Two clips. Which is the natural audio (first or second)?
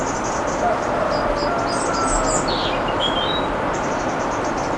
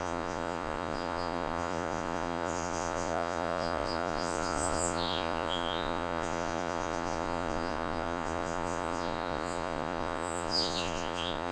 first